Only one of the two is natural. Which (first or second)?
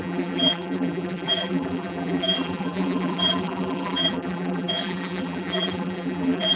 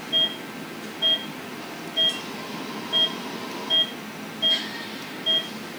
second